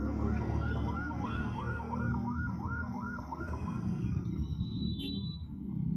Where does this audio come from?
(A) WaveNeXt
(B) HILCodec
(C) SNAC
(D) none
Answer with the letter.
C